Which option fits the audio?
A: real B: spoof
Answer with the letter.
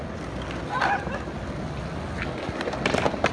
A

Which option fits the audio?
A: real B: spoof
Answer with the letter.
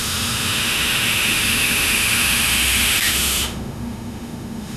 B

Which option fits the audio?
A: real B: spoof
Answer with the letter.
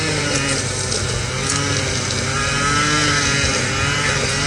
A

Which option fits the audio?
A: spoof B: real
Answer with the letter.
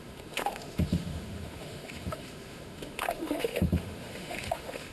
A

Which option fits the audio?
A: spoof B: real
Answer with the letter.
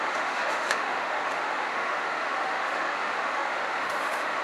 A